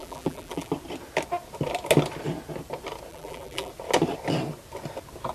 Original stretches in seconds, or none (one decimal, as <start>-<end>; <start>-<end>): 0.7-3.1; 3.7-5.3